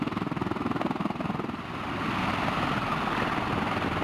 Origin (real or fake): real